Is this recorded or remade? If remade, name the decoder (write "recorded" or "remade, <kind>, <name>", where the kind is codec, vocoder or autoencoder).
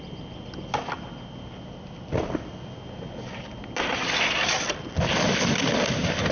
recorded